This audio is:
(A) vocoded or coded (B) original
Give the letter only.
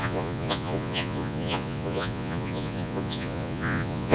A